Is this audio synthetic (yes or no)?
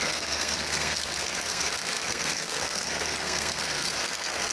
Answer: yes